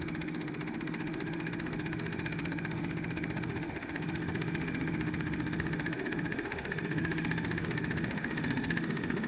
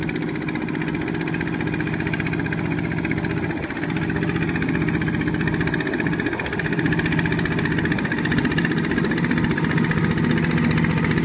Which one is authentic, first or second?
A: second